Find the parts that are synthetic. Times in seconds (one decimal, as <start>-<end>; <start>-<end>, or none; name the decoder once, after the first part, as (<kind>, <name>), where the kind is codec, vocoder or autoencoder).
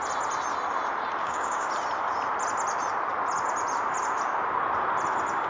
1.2-1.7 (codec, DAC)